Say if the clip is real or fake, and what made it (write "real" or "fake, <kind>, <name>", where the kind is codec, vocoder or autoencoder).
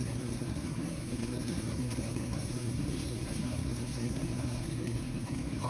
fake, codec, SNAC